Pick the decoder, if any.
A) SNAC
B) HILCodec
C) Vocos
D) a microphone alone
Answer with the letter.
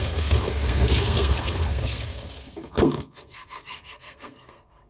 A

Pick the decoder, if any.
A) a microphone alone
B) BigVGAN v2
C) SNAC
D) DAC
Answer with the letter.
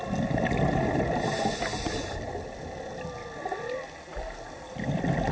A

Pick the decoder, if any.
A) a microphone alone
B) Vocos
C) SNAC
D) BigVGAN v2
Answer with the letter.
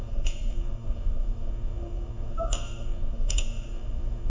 C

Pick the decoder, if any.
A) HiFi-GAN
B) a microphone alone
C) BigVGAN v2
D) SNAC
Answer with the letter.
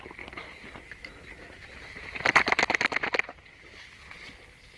B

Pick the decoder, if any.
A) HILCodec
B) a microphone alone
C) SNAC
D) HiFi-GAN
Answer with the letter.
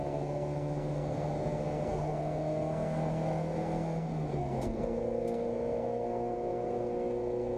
C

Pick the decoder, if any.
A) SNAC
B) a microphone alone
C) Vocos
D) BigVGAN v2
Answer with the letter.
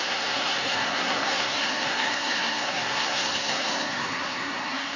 A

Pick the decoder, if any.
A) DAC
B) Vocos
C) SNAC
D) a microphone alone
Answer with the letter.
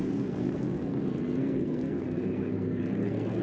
C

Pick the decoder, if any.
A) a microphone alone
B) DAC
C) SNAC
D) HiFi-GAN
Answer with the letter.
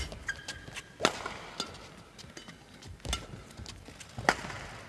A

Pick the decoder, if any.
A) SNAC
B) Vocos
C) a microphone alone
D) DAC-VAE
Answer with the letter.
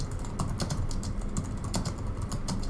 C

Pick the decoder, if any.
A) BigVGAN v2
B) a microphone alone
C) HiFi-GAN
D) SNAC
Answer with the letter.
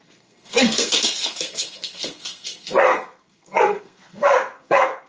D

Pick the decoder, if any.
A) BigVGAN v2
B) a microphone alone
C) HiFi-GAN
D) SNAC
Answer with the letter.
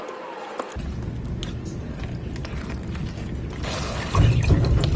B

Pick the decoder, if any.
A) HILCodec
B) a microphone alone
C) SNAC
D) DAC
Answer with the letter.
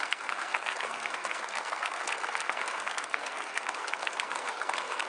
C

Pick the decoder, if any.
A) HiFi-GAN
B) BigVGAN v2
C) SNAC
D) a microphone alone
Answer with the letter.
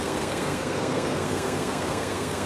C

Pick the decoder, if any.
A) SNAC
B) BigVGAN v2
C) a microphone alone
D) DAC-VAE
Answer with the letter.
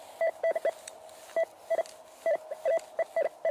C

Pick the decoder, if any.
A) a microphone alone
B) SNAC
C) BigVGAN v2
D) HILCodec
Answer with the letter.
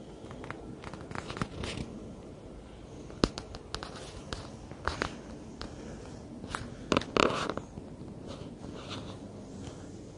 A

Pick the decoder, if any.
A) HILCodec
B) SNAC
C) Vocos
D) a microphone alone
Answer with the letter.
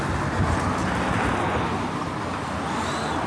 D